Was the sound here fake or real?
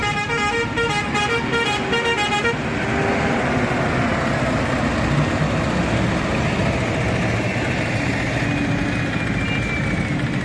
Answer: real